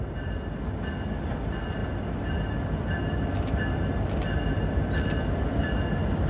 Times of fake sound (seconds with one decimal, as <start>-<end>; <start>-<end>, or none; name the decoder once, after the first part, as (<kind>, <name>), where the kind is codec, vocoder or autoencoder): none